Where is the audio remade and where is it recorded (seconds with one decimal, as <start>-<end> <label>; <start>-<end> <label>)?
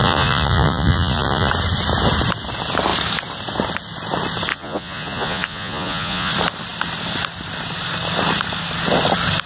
0.0-1.5 remade; 1.5-4.5 recorded; 4.5-6.3 remade; 6.3-9.5 recorded